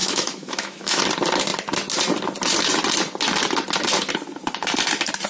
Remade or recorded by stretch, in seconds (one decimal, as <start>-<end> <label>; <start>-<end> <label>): 0.0-1.0 remade; 1.0-5.3 recorded